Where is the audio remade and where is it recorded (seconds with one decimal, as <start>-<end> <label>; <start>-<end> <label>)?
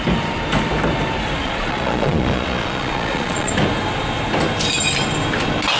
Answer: 0.0-1.4 recorded; 1.4-3.5 remade; 3.5-5.8 recorded